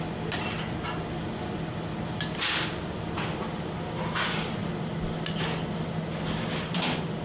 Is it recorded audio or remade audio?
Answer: recorded